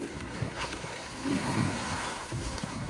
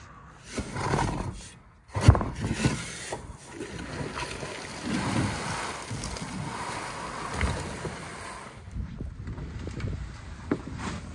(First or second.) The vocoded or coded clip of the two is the first